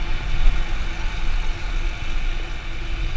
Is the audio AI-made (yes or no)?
no